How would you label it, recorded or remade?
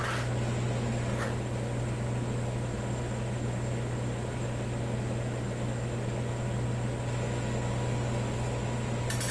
recorded